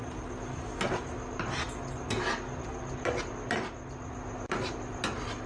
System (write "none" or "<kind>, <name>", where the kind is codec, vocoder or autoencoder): none